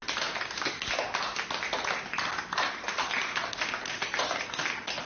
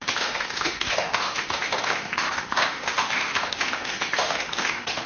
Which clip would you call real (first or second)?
first